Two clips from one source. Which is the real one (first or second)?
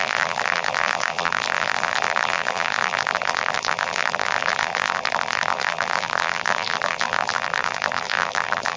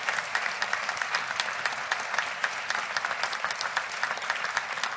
second